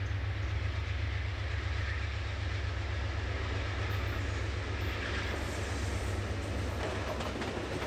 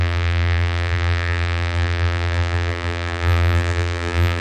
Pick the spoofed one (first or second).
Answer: second